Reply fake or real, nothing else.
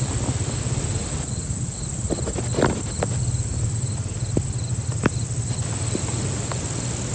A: real